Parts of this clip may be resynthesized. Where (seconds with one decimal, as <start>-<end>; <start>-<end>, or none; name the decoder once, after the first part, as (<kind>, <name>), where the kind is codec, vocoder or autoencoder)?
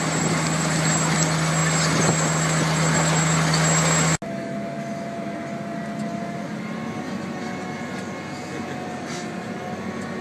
none